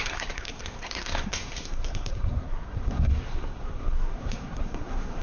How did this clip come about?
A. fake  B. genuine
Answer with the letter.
A